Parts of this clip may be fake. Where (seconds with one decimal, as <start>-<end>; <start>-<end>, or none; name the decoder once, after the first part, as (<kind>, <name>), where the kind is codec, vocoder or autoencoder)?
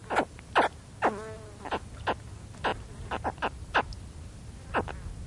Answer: none